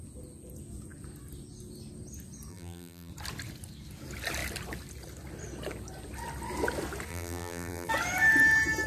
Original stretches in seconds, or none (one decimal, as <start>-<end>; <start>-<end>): 0.0-2.5; 3.1-7.1; 7.9-8.9